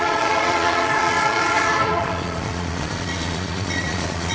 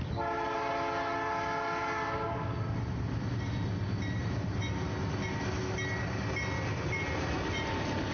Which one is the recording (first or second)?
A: second